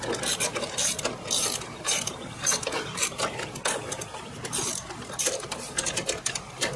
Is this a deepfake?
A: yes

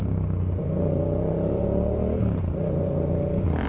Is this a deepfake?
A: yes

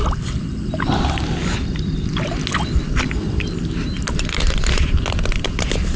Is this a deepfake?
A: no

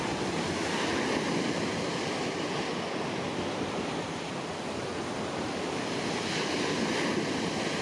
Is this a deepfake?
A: no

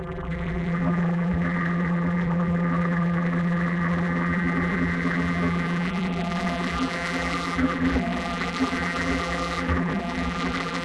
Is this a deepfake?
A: yes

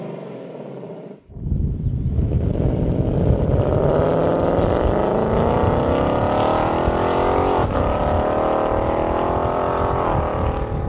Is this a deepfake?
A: yes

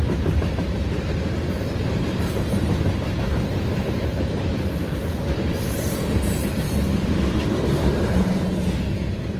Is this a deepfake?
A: yes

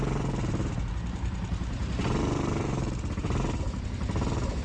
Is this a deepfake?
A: yes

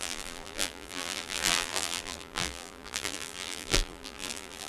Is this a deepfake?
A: yes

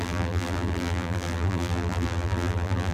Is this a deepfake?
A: yes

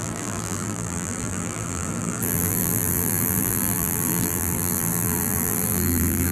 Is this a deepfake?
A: yes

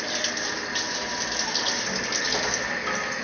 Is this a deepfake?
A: no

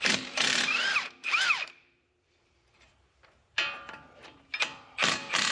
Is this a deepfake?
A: yes